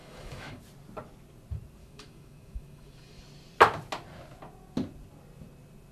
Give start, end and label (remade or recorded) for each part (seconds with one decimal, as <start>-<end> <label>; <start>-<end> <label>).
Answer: 0.0-0.6 remade; 0.6-1.8 recorded; 1.8-3.2 remade; 3.2-5.9 recorded